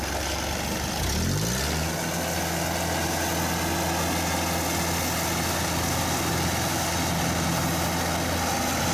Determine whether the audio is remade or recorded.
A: recorded